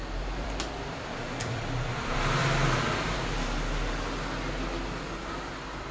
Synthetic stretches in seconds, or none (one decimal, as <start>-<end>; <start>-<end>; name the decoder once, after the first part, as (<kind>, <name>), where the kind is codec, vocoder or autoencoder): 0.0-2.4 (vocoder, BigVGAN v2)